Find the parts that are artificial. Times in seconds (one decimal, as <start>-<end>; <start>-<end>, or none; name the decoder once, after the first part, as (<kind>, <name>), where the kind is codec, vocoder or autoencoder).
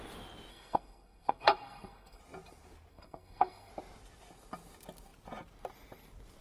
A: 0.5-2.2 (codec, SNAC); 2.9-3.7